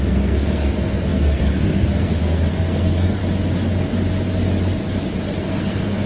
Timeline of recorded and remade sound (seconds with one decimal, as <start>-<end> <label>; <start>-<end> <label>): 0.0-3.2 remade; 3.2-5.4 recorded; 5.4-6.1 remade